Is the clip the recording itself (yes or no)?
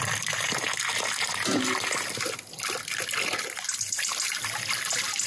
yes